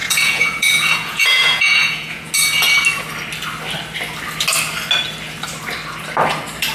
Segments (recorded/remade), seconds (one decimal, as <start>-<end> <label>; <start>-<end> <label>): 0.0-2.3 remade; 2.3-6.7 recorded